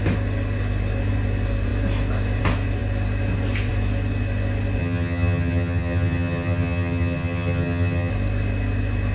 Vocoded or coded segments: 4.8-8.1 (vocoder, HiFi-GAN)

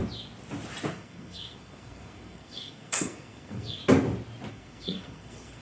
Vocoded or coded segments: 0.9-3.8 (codec, SNAC); 4.5-5.6

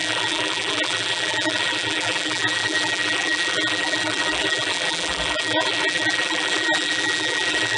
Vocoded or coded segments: 0.0-7.8 (vocoder, BigVGAN v2)